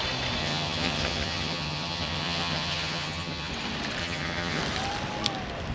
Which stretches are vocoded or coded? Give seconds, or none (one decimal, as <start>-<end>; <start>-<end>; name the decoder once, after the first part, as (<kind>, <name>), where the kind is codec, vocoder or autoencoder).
0.4-3.5 (vocoder, HiFi-GAN); 4.0-4.6